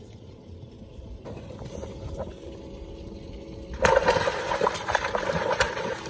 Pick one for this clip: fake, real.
real